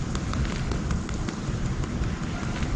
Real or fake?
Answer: real